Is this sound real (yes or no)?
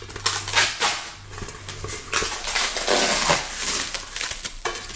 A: yes